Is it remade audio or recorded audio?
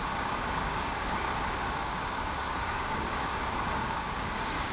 remade